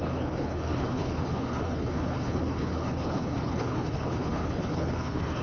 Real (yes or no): no